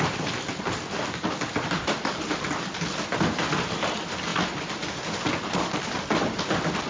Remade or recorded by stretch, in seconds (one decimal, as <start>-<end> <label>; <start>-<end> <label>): 0.0-6.9 recorded